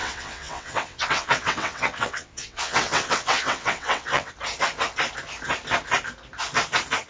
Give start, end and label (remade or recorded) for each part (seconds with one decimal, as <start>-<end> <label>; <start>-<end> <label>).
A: 0.0-4.3 remade; 4.3-7.1 recorded